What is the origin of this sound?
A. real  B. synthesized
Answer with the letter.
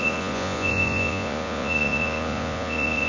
B